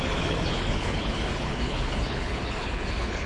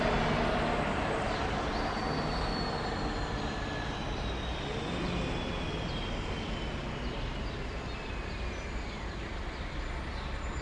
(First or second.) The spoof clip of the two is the first